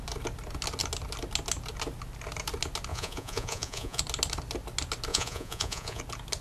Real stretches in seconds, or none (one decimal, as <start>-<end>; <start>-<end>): 0.0-2.9; 4.0-5.1; 6.0-6.4